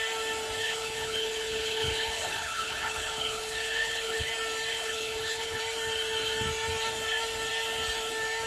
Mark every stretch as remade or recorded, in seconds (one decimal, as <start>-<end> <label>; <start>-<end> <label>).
0.0-0.6 recorded; 0.6-4.3 remade; 4.3-4.7 recorded; 4.7-5.6 remade; 5.6-8.5 recorded